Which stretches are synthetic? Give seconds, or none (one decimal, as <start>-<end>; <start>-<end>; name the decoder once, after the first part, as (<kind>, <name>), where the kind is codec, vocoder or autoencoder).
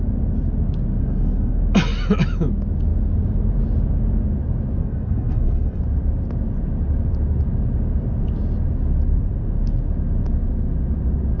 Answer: 1.0-1.6 (codec, SNAC); 4.8-5.8